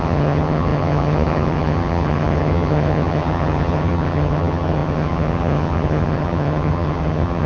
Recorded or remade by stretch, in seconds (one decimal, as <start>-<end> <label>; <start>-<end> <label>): 0.0-7.5 remade